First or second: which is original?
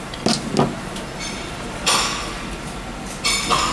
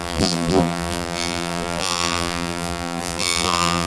first